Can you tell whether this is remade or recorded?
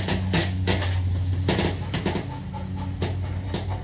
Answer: recorded